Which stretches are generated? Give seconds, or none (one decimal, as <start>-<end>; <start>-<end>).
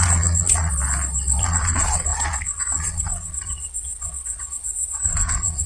0.0-0.7; 1.4-5.7